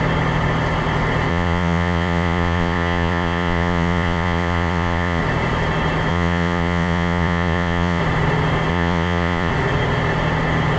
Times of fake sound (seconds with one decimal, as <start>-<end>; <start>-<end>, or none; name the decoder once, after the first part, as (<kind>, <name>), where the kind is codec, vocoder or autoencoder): 1.3-5.2 (vocoder, Vocos); 6.1-8.0; 8.7-9.5